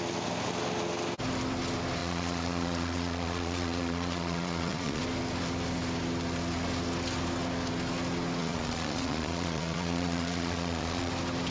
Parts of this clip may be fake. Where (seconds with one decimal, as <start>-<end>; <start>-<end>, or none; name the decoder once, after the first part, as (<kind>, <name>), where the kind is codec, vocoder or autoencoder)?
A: 2.0-5.0 (vocoder, Vocos); 8.4-11.1